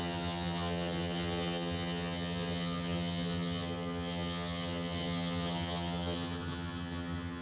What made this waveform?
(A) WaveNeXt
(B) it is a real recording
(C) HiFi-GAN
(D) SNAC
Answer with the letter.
C